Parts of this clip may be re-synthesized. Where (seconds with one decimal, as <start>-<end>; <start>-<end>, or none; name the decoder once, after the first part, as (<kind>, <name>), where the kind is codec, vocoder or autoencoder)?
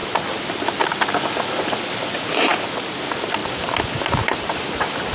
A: 3.4-5.1 (vocoder, BigVGAN v2)